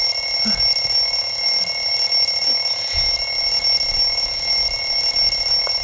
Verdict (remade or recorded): recorded